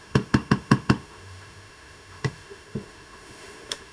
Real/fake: fake